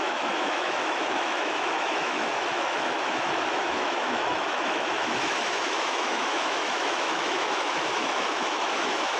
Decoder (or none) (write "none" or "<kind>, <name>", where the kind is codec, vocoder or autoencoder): autoencoder, DAC-VAE